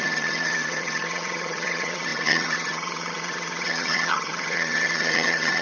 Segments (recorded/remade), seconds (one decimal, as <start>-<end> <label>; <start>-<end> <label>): 0.0-5.6 remade